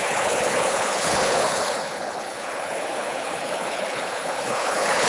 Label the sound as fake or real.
fake